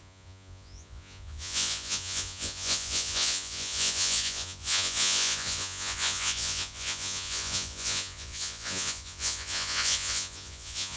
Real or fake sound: fake